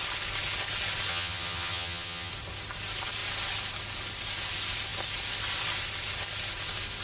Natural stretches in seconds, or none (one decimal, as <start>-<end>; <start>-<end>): 0.0-1.1; 2.3-7.0